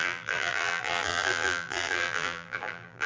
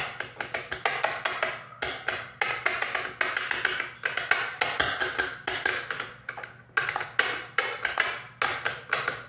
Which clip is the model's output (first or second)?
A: first